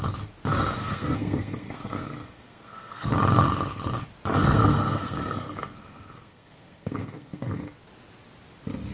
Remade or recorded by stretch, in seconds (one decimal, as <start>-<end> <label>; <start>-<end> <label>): 0.0-0.8 recorded; 0.8-3.1 remade; 3.1-4.5 recorded; 4.5-7.5 remade; 7.5-8.9 recorded